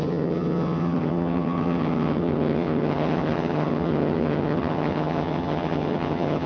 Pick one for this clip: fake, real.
fake